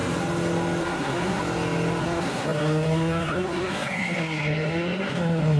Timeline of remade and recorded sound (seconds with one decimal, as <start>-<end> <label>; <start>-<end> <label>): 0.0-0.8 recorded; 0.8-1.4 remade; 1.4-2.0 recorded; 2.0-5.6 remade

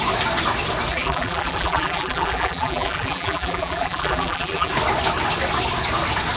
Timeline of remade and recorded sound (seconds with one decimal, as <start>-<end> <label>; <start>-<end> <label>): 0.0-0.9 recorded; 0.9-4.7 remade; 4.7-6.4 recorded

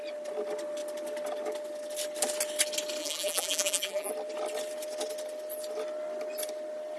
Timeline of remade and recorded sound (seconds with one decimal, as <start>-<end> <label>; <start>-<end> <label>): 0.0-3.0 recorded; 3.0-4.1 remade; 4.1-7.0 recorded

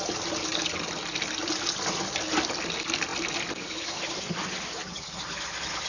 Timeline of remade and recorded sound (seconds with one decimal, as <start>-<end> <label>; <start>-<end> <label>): 0.0-5.9 recorded

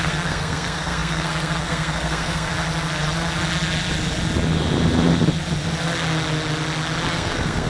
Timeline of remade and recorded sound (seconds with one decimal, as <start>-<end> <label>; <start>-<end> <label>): 0.0-2.5 remade; 2.5-7.1 recorded; 7.1-7.7 remade

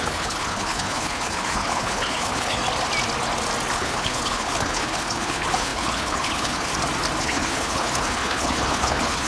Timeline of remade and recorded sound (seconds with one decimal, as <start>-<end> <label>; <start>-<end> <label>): 0.0-2.6 remade; 2.6-3.7 recorded; 3.7-6.7 remade; 6.7-7.2 recorded; 7.2-9.3 remade